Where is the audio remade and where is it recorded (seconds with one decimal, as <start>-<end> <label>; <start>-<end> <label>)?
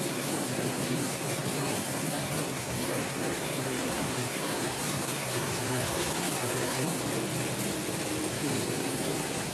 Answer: 0.0-7.0 remade; 7.0-8.3 recorded; 8.3-9.5 remade